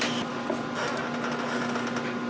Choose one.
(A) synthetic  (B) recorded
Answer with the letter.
B